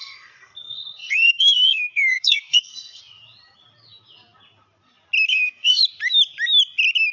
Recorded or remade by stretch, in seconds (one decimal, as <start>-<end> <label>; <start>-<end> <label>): 0.0-3.0 remade; 3.0-5.3 recorded; 5.3-5.8 remade; 5.8-7.1 recorded